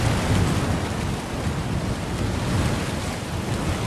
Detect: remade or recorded recorded